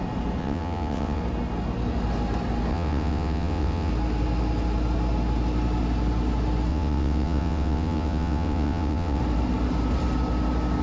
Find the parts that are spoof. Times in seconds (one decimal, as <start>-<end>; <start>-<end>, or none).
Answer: 0.4-1.2; 2.7-3.9; 6.7-9.2